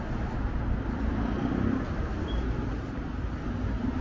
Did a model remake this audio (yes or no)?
no